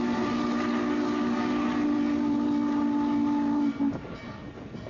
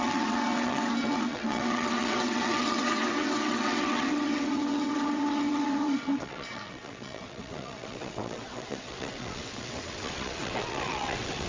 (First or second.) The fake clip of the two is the second